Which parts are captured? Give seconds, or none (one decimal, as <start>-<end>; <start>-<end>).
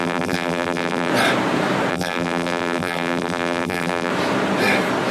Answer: 1.1-1.9; 4.1-5.1